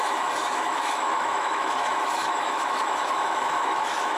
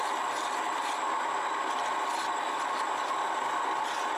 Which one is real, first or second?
second